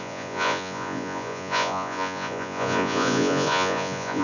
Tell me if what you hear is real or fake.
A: fake